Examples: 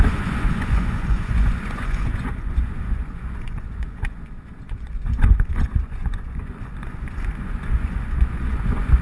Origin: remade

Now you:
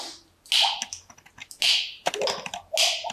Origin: recorded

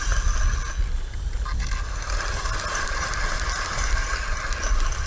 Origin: recorded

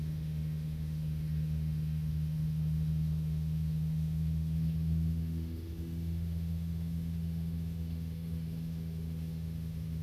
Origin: remade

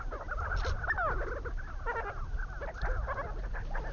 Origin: recorded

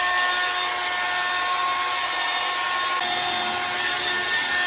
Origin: recorded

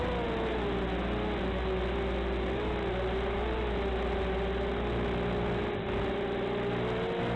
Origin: recorded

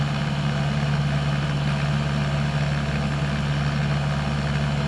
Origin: recorded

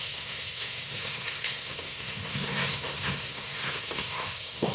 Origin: remade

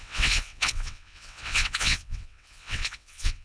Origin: remade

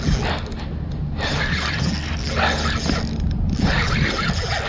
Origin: recorded